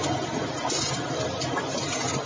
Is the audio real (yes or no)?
yes